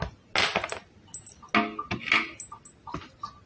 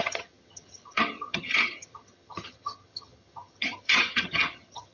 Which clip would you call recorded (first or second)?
first